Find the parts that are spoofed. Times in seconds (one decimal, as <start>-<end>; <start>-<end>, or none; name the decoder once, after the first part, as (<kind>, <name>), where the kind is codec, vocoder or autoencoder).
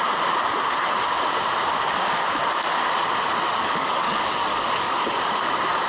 3.5-5.4 (codec, DAC)